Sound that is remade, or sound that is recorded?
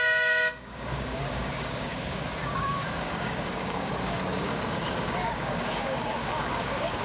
remade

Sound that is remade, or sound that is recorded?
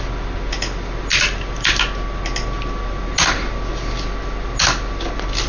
recorded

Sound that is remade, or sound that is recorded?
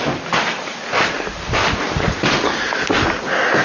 recorded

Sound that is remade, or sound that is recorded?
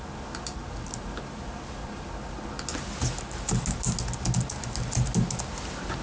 recorded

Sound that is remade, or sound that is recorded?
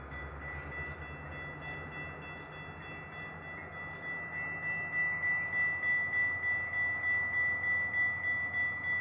recorded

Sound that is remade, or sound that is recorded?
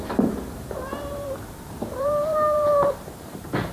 remade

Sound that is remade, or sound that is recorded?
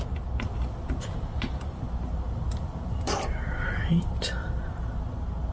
recorded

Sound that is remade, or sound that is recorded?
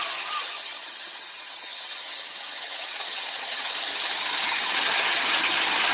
remade